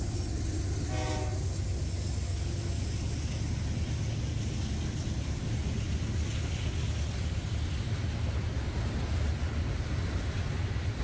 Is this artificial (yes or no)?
no